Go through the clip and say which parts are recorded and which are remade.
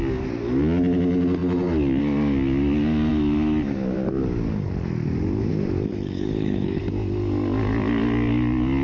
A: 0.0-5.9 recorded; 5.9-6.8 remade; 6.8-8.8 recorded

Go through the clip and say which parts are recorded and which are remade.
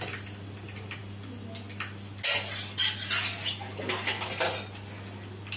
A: 0.0-5.6 recorded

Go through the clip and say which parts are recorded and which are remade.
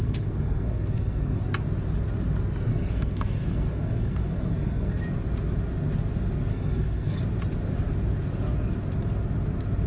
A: 0.0-1.4 remade; 1.4-2.7 recorded; 2.7-5.0 remade; 5.0-6.5 recorded; 6.5-7.2 remade; 7.2-9.9 recorded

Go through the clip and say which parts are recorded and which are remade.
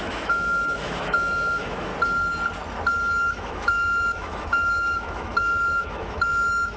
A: 0.0-1.9 remade; 1.9-3.4 recorded; 3.4-6.8 remade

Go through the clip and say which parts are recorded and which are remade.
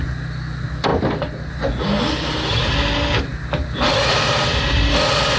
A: 0.0-5.4 recorded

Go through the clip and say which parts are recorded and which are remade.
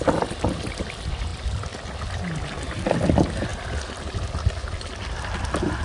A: 0.0-5.8 recorded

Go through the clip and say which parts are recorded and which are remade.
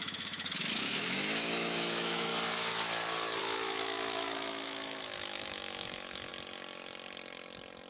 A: 0.0-2.3 remade; 2.3-3.4 recorded; 3.4-6.3 remade; 6.3-7.9 recorded